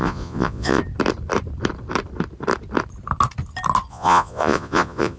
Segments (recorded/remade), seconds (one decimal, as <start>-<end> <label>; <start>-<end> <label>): 0.0-0.8 remade; 0.8-3.9 recorded; 3.9-5.2 remade